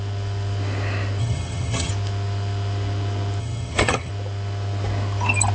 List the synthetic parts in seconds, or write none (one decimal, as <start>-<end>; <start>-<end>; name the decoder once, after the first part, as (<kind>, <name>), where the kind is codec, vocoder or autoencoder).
1.2-1.9 (vocoder, HiFi-GAN); 3.4-4.1